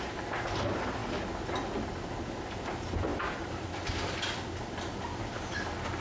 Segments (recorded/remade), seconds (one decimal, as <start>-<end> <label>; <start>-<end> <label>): 0.0-3.1 recorded; 3.1-3.8 remade; 3.8-6.0 recorded